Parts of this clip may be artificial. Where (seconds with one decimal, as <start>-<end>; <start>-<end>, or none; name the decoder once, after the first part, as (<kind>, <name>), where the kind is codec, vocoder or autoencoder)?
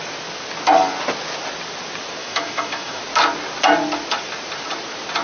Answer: 2.2-3.0 (autoencoder, DAC-VAE)